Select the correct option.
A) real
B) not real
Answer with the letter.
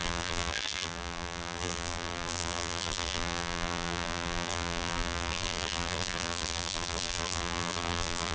B